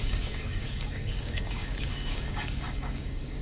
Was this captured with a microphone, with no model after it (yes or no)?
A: no